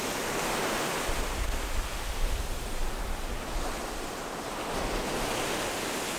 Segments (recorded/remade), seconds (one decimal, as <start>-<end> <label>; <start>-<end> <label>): 0.0-6.2 recorded